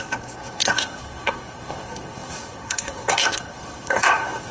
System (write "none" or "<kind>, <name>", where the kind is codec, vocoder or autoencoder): codec, SNAC